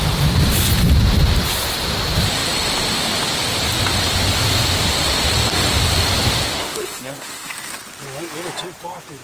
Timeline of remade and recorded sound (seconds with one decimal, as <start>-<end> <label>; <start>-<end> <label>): 0.0-6.5 recorded; 6.5-7.5 remade; 7.5-9.2 recorded